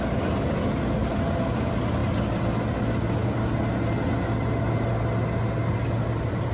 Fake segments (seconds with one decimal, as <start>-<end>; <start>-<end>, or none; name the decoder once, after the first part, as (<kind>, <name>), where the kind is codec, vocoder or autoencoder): none

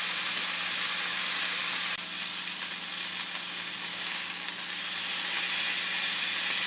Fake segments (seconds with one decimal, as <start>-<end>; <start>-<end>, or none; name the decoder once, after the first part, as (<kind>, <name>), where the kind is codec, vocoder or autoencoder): 3.9-4.5 (codec, DAC)

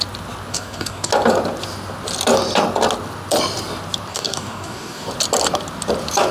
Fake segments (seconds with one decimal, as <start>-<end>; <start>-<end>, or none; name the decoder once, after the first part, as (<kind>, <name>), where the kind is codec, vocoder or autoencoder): 0.5-1.1 (codec, DAC); 4.1-5.1

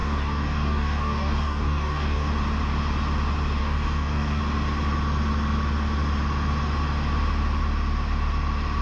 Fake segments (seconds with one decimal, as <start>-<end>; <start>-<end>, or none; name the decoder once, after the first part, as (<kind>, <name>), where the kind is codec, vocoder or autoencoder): 0.0-2.3 (codec, DAC); 3.6-4.4